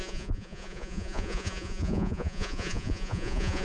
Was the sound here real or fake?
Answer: fake